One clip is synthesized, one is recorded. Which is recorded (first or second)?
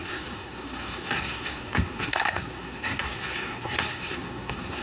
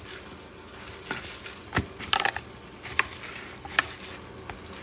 second